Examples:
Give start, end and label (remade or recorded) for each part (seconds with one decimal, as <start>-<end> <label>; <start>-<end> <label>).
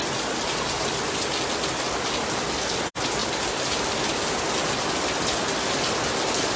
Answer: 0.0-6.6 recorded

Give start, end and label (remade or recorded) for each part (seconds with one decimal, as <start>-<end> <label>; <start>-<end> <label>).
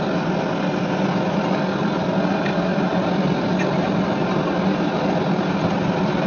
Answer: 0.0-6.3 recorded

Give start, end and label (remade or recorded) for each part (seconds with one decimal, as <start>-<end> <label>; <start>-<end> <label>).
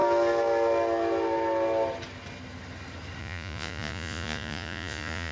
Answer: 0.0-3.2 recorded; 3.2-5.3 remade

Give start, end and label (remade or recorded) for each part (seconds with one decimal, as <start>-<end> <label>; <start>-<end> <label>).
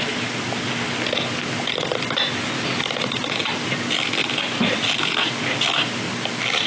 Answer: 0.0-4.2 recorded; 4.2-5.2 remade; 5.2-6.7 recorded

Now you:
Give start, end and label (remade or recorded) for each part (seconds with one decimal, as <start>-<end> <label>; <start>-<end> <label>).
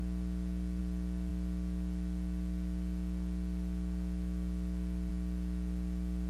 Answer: 0.0-6.3 recorded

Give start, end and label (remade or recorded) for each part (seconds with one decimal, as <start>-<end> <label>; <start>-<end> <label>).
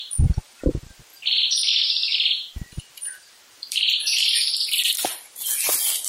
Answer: 0.0-2.1 recorded; 2.1-4.2 remade; 4.2-6.1 recorded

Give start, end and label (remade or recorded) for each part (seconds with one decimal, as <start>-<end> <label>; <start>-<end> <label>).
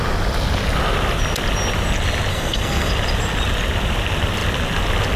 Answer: 0.0-2.3 recorded; 2.3-2.9 remade; 2.9-5.2 recorded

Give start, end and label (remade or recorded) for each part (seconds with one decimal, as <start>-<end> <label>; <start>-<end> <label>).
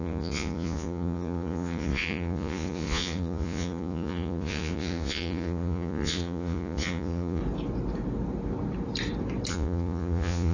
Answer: 0.0-7.4 remade; 7.4-9.5 recorded; 9.5-10.5 remade